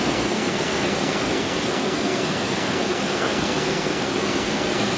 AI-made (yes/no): yes